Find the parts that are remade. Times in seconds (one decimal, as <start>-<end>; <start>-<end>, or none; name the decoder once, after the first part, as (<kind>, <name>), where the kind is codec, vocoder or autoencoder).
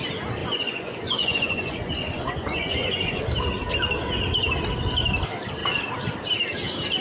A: 0.4-3.2 (vocoder, Vocos)